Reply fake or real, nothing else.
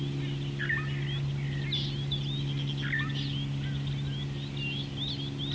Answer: real